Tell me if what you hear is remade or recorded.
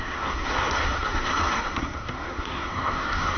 remade